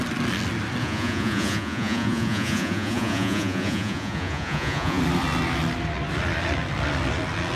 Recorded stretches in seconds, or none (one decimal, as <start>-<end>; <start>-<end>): 0.0-0.8; 5.0-7.6